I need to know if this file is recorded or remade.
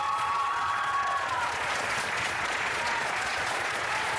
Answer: remade